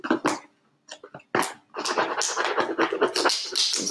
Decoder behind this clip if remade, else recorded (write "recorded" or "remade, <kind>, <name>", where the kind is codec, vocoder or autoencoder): recorded